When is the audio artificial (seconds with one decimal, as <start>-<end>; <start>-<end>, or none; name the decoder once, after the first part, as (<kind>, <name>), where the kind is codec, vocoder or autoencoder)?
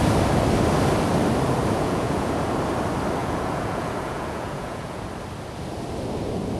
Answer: 1.6-2.5 (vocoder, Vocos); 3.2-5.0